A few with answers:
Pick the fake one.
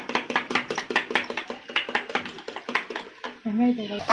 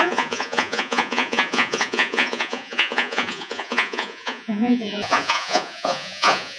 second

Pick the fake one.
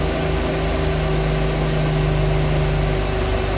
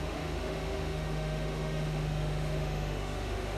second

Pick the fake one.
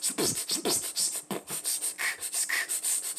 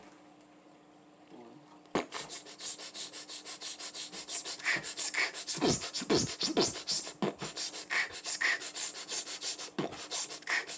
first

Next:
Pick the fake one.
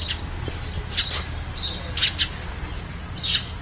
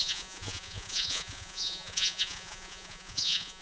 second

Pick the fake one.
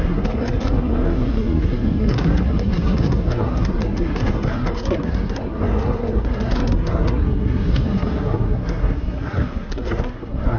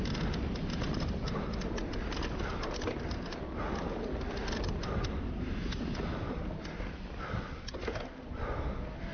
first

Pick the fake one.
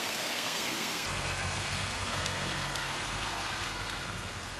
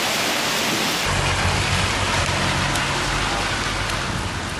first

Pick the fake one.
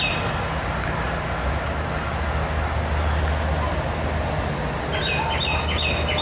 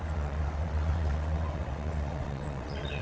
second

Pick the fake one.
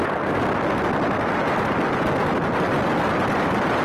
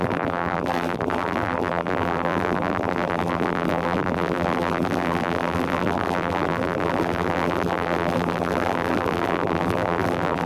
second